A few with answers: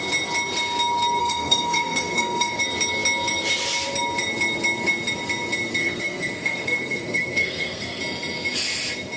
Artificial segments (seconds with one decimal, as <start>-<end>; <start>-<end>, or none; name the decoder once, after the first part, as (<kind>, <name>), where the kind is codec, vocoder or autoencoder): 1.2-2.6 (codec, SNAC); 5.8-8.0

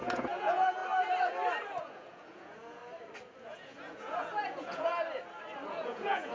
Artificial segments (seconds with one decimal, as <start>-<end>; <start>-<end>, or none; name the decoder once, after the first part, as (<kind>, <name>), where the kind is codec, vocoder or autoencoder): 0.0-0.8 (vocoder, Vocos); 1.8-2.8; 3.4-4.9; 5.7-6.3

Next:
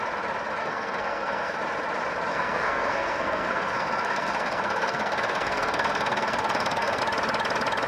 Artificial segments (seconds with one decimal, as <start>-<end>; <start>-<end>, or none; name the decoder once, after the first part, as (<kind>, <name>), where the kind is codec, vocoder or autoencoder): 0.6-1.6 (codec, SNAC); 2.3-7.0

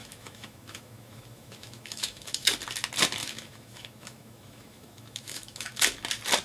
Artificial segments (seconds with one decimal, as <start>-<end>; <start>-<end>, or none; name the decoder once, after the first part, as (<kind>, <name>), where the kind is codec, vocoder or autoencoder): 0.0-2.5 (autoencoder, DAC-VAE); 3.2-5.8

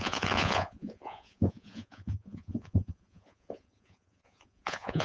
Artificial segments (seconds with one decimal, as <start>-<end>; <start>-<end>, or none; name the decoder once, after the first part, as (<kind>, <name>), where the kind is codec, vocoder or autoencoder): 0.0-5.0 (vocoder, Vocos)

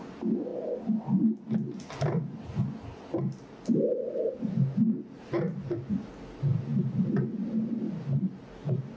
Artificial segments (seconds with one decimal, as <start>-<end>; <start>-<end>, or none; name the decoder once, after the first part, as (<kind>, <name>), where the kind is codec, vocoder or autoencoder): none

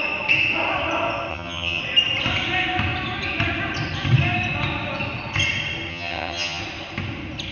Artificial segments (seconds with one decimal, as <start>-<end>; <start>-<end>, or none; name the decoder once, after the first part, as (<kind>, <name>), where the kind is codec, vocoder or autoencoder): 1.3-1.8 (vocoder, HiFi-GAN); 5.9-6.6